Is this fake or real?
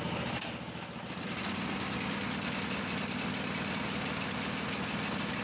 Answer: real